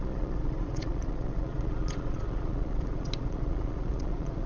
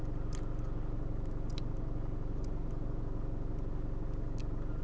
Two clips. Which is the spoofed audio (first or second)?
first